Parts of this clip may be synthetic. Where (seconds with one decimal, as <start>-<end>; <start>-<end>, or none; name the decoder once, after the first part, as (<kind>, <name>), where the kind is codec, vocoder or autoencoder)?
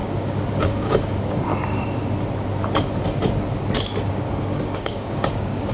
0.0-1.5 (codec, DAC); 4.1-5.7